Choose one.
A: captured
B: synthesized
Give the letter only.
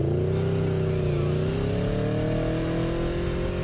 A